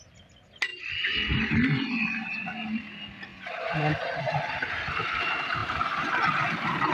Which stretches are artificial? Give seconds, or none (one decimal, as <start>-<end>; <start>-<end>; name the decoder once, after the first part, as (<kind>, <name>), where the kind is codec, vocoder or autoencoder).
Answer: none